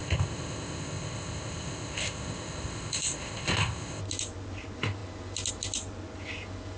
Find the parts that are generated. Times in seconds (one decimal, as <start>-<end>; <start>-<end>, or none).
0.0-4.0